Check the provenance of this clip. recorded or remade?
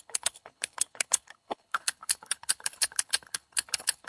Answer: remade